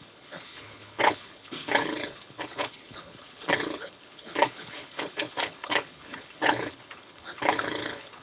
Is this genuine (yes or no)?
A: no